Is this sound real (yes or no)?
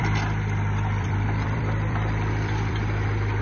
no